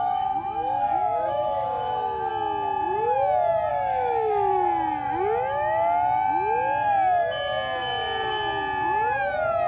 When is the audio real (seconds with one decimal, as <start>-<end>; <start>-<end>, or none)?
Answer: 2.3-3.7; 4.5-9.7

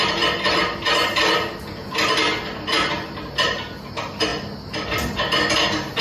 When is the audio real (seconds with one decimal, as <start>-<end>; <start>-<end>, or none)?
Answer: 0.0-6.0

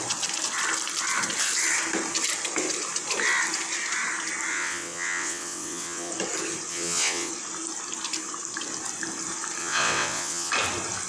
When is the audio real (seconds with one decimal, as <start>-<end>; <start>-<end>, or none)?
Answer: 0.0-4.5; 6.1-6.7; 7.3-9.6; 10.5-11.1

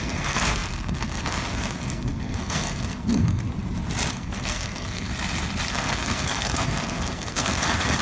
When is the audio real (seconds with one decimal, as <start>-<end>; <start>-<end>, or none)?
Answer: 3.4-4.1; 5.1-5.7